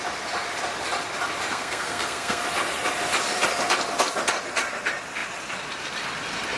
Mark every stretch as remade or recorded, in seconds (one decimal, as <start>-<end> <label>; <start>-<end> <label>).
0.0-1.5 recorded; 1.5-2.4 remade; 2.4-6.6 recorded